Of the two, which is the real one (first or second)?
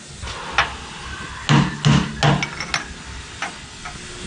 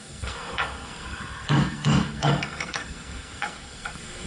first